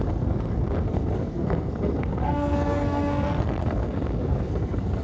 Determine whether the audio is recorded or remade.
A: remade